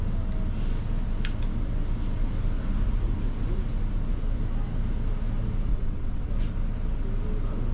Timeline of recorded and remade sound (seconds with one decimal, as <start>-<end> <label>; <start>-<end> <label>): 0.0-5.7 recorded; 5.7-6.3 remade; 6.3-7.7 recorded